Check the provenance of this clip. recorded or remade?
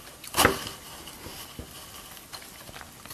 recorded